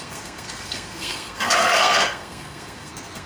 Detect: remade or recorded remade